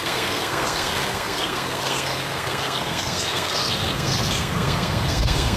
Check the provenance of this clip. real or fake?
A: fake